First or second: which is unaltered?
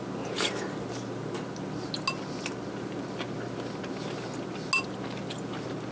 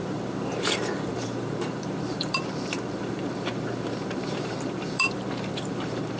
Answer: first